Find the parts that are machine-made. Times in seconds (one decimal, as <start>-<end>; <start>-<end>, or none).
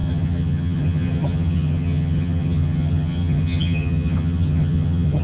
0.0-5.2